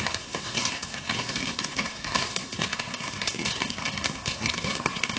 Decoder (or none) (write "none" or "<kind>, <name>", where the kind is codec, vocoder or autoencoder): codec, SNAC